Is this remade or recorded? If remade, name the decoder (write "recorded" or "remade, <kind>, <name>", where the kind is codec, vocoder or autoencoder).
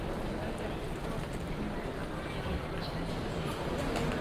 recorded